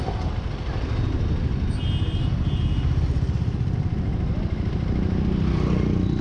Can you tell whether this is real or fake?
real